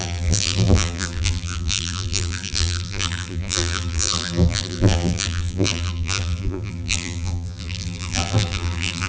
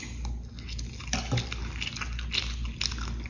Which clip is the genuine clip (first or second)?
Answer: second